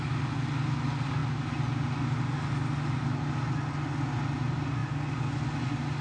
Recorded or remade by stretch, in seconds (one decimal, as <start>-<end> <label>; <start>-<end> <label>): 0.0-6.0 recorded